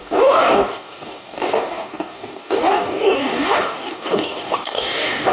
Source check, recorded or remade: remade